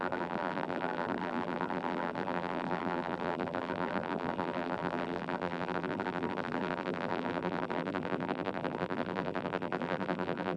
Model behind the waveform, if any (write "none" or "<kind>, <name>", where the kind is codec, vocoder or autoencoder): vocoder, BigVGAN v2